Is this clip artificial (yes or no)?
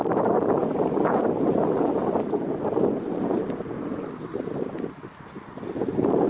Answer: no